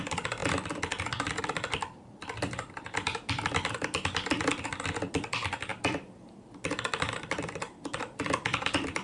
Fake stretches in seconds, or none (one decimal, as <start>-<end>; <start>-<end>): 0.0-0.4; 1.4-9.0